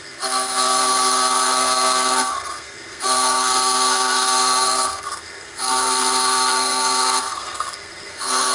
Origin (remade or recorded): remade